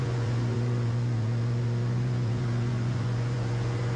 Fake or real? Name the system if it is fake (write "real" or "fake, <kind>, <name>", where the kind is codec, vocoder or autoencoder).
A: fake, vocoder, Vocos